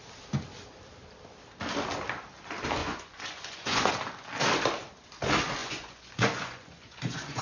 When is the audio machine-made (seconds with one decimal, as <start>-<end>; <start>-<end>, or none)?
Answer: 2.8-3.9; 5.6-7.4